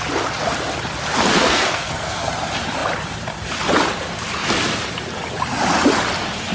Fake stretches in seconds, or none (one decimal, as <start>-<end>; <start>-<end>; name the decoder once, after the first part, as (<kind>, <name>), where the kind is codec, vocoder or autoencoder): 1.3-2.3 (codec, SNAC)

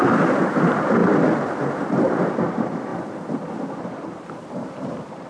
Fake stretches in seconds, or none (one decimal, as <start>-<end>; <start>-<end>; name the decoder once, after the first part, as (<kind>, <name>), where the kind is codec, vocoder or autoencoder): 0.0-1.0 (vocoder, BigVGAN v2); 1.7-2.9; 3.8-5.3

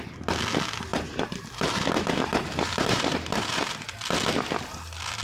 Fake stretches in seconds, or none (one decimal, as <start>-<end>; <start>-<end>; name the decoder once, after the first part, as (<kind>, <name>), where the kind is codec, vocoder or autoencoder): 0.9-3.7 (vocoder, BigVGAN v2)

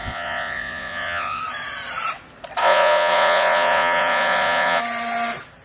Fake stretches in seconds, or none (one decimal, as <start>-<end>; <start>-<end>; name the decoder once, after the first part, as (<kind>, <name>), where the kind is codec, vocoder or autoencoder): 0.0-1.4 (vocoder, Vocos); 2.6-4.8

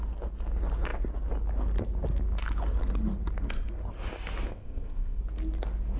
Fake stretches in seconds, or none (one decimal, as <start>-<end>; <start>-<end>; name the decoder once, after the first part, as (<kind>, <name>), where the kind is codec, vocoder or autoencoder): 4.5-5.2 (codec, ZipCodec)